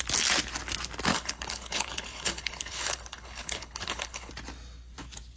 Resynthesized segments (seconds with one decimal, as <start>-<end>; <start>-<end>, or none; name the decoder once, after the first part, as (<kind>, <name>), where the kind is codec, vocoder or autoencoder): 1.1-4.3 (codec, HILCodec)